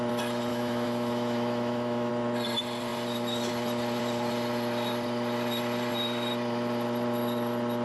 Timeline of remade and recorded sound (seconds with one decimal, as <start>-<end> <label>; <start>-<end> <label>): 0.0-0.5 recorded; 0.5-2.1 remade; 2.1-7.8 recorded

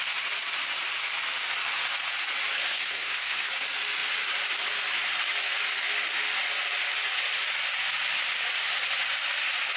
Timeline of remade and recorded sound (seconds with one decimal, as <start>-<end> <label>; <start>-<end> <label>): 0.0-2.6 recorded; 2.6-3.5 remade; 3.5-9.8 recorded

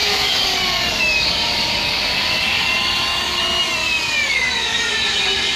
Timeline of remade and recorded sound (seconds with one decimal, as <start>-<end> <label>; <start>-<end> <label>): 0.0-3.4 remade; 3.4-3.8 recorded; 3.8-5.6 remade

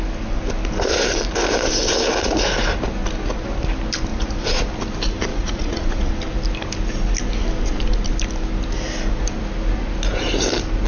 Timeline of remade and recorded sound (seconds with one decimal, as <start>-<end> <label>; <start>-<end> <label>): 0.0-4.1 recorded; 4.1-4.6 remade; 4.6-5.3 recorded; 5.3-6.2 remade; 6.2-10.9 recorded

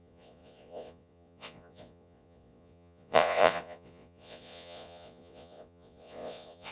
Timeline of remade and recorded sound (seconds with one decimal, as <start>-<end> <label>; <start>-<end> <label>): 0.0-6.7 remade

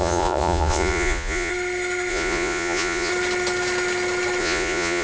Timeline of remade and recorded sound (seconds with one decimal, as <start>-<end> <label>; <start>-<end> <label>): 0.0-1.5 remade; 1.5-2.1 recorded; 2.1-3.1 remade; 3.1-4.4 recorded; 4.4-5.0 remade